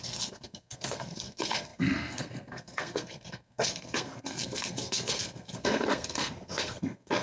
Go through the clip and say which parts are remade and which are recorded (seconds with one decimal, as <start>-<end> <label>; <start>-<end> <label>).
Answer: 0.0-7.2 remade